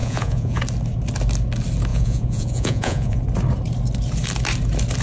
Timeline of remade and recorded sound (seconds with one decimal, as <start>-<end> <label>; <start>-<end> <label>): 0.0-0.6 remade; 0.6-1.9 recorded; 1.9-3.2 remade; 3.2-5.0 recorded